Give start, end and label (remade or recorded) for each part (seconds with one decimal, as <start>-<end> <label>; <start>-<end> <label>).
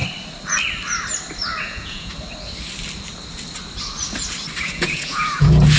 0.0-1.6 recorded; 1.6-2.1 remade; 2.1-4.6 recorded; 4.6-5.8 remade